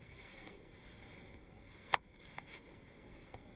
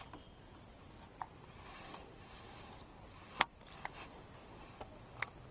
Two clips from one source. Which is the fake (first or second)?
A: first